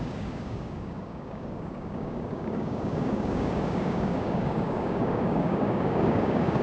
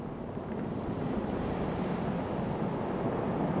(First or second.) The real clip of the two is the second